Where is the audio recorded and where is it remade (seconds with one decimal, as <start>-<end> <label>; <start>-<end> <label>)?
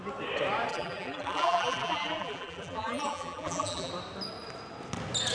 0.0-0.7 recorded; 0.7-3.9 remade; 3.9-5.3 recorded